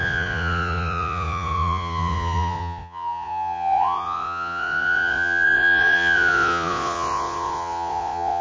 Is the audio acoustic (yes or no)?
no